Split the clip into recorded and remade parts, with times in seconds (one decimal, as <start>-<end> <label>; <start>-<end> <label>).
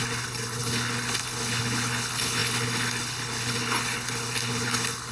0.0-5.1 remade